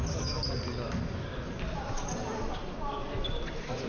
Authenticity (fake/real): real